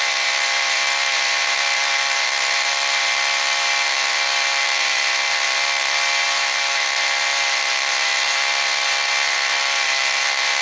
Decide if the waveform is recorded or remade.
remade